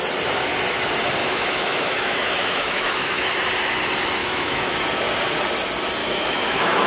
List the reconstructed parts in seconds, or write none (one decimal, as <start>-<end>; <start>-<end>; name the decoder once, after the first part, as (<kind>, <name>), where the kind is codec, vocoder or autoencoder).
1.2-3.3 (autoencoder, DAC-VAE); 4.2-4.8; 6.0-6.9